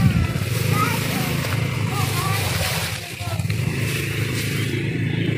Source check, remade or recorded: remade